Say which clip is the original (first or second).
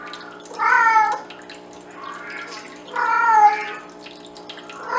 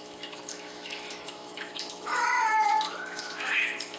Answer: first